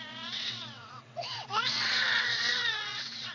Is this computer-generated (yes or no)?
yes